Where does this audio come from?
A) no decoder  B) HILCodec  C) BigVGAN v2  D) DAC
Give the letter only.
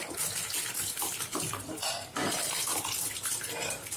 C